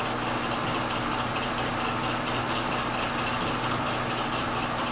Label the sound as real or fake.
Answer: real